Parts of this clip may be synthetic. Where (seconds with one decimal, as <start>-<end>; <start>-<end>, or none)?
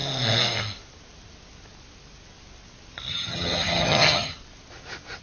3.1-4.3